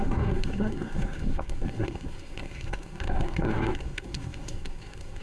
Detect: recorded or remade remade